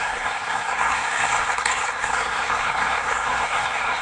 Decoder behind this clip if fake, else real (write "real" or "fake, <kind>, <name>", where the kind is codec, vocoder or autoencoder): fake, codec, SNAC